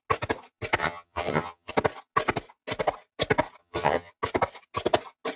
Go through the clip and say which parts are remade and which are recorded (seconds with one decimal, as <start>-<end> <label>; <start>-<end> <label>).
0.0-0.8 recorded; 0.8-1.7 remade; 1.7-3.6 recorded; 3.6-4.1 remade; 4.1-5.4 recorded

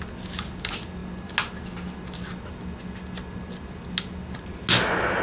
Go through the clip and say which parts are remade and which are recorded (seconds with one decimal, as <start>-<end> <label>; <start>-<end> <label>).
0.0-5.2 recorded